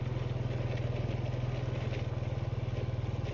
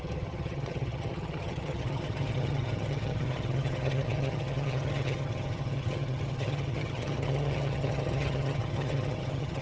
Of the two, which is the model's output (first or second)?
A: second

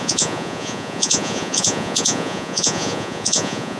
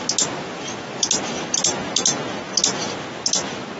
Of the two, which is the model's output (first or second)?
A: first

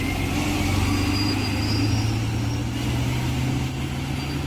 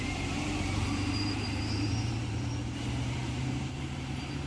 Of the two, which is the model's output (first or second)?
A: second